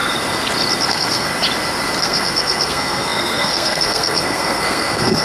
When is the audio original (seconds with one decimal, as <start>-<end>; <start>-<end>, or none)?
0.0-0.9; 1.3-2.0